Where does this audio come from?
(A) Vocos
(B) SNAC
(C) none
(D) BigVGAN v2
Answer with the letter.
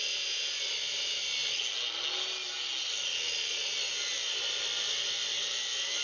C